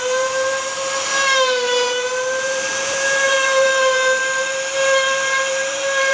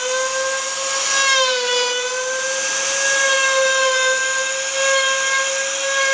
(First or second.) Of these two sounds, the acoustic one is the second